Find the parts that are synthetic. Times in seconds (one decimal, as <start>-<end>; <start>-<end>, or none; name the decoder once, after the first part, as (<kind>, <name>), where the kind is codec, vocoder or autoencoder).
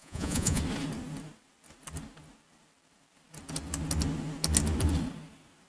0.0-0.6 (vocoder, Vocos)